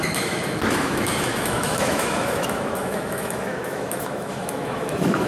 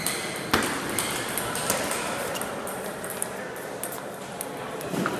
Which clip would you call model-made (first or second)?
first